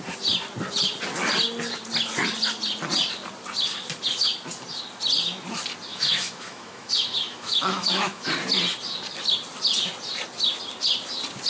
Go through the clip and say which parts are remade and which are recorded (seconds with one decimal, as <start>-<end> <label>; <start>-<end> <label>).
0.0-5.9 recorded; 5.9-8.3 remade; 8.3-11.5 recorded